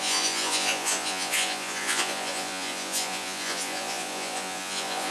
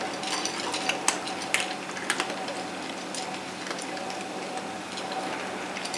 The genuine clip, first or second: second